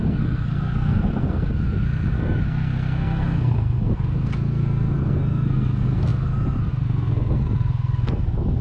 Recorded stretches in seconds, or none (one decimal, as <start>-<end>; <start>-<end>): none